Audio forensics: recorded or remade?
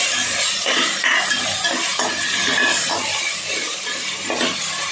recorded